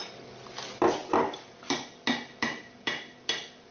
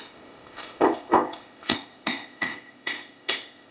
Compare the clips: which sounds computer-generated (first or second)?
second